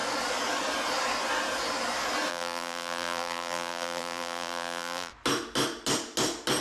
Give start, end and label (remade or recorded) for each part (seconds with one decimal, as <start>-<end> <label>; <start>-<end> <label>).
0.0-2.3 recorded; 2.3-5.1 remade; 5.1-6.6 recorded